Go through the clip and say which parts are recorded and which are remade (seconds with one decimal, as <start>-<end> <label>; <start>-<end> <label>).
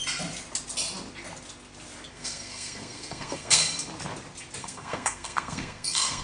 0.0-2.1 recorded; 2.1-3.6 remade; 3.6-4.6 recorded; 4.6-6.2 remade